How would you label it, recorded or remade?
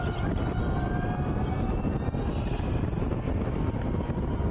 recorded